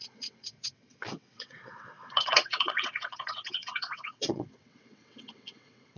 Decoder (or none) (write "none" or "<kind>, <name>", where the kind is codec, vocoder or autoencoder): vocoder, WaveNeXt